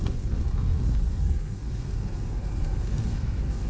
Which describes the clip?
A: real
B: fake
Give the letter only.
B